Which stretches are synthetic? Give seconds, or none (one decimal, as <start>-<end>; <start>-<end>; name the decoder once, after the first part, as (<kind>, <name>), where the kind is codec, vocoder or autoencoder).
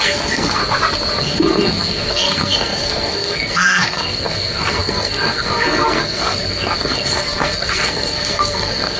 0.0-0.6 (codec, SNAC); 1.2-9.0